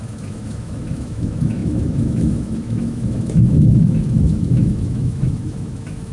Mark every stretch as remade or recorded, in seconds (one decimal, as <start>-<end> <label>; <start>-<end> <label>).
0.0-6.1 remade